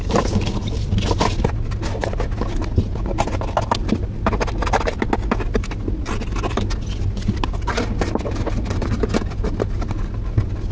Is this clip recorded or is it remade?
recorded